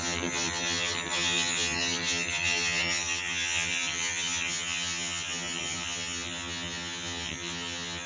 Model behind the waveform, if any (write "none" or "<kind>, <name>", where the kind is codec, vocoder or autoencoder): vocoder, HiFi-GAN